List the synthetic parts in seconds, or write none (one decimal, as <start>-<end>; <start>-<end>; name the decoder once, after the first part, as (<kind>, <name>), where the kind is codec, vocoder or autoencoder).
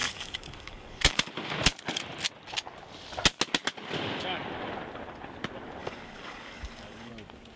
0.0-1.3 (codec, DAC); 5.8-7.1